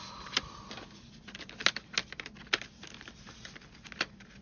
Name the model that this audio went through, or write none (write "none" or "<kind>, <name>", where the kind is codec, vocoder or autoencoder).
none